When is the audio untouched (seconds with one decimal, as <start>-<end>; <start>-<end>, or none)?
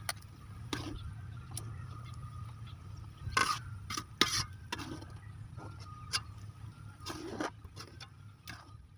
0.0-9.0